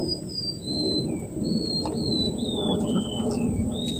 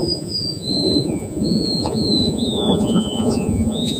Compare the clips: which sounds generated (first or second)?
second